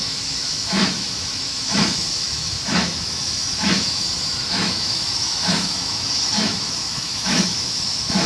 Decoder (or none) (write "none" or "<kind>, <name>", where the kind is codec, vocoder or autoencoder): autoencoder, DAC-VAE